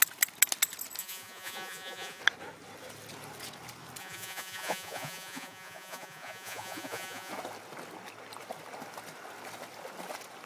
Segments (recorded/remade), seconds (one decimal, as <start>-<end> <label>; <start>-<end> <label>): 0.0-1.0 recorded; 1.0-2.2 remade; 2.2-4.0 recorded; 4.0-7.3 remade; 7.3-10.5 recorded